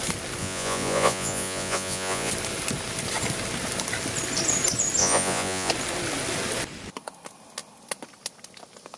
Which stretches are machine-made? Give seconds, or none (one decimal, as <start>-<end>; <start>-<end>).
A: 0.4-2.3; 5.0-5.7